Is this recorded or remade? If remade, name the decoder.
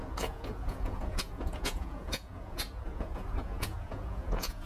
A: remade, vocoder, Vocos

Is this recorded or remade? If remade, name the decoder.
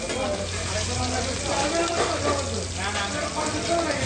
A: recorded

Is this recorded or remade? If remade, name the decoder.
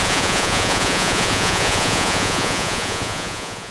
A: remade, vocoder, Vocos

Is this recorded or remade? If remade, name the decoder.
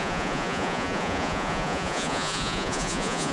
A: remade, vocoder, Vocos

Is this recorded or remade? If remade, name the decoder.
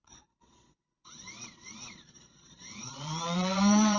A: remade, vocoder, Vocos